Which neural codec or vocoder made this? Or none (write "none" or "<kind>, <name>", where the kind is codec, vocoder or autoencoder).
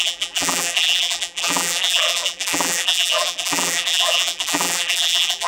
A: vocoder, BigVGAN v2